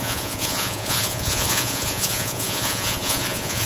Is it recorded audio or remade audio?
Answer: remade